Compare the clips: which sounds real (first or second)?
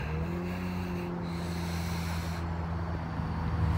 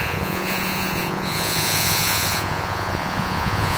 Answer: first